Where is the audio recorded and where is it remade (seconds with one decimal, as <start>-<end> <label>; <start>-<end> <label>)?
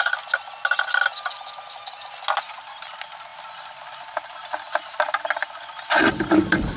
0.0-6.8 recorded